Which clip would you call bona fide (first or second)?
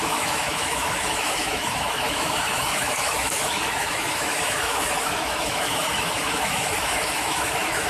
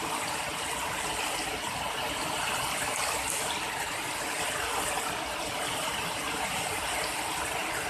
second